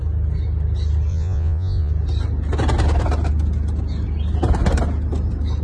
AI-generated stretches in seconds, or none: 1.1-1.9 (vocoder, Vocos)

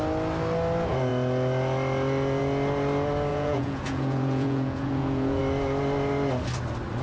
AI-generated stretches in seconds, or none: 3.3-5.4 (vocoder, Vocos)

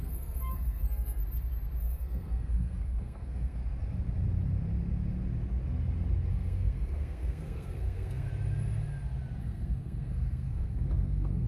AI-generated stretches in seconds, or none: 0.0-1.2 (codec, SNAC); 1.8-3.6; 6.3-8.3; 9.4-11.5

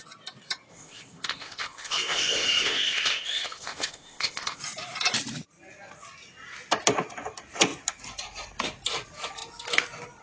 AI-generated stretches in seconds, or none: 0.7-4.6 (codec, ZipCodec)

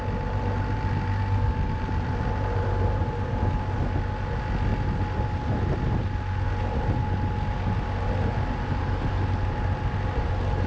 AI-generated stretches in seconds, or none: none

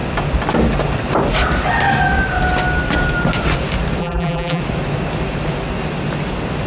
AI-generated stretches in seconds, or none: 4.0-4.6 (vocoder, BigVGAN v2)

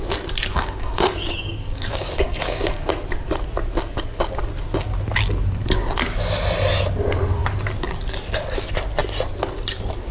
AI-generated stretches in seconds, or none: 0.5-2.9 (codec, DAC)

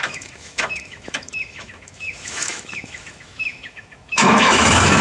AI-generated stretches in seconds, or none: 0.0-5.0 (autoencoder, DAC-VAE)